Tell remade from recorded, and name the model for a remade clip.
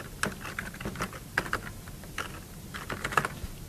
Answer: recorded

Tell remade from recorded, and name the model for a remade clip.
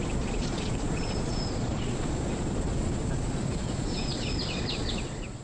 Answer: remade, vocoder, Vocos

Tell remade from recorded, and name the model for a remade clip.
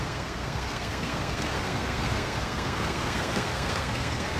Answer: remade, codec, SNAC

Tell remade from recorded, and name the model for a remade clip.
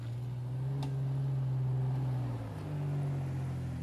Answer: recorded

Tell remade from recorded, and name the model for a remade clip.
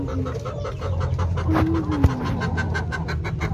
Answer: recorded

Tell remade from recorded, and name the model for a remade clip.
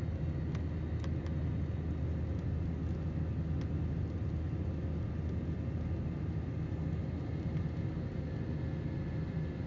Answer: recorded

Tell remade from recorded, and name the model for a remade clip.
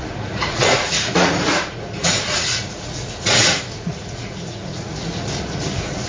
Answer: remade, vocoder, Vocos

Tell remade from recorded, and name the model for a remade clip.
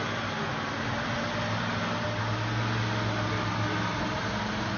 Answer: recorded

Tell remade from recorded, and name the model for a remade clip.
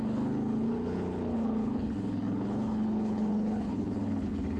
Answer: remade, codec, HILCodec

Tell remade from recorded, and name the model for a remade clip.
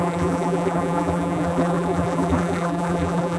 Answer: remade, vocoder, BigVGAN v2